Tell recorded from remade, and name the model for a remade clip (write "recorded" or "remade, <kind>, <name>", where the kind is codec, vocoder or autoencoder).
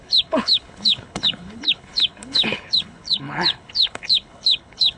remade, codec, HILCodec